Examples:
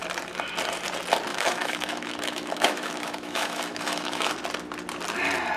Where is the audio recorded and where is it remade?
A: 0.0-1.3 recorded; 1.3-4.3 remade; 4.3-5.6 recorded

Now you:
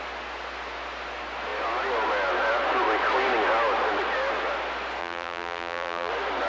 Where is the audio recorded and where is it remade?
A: 0.0-5.0 recorded; 5.0-6.1 remade; 6.1-6.5 recorded

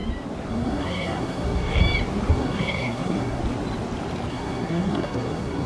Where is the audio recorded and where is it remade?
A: 0.0-0.5 recorded; 0.5-1.8 remade; 1.8-2.3 recorded; 2.3-3.4 remade; 3.4-4.3 recorded; 4.3-5.7 remade

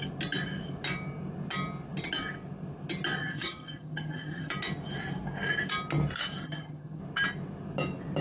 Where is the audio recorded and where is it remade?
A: 0.0-3.2 recorded; 3.2-4.5 remade; 4.5-6.4 recorded; 6.4-7.0 remade; 7.0-8.2 recorded

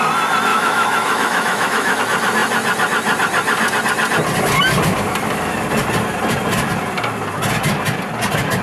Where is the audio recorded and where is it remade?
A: 0.0-0.5 recorded; 0.5-2.0 remade; 2.0-8.6 recorded